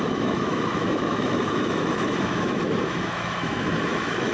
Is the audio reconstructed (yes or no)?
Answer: yes